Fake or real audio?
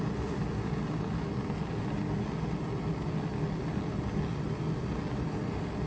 real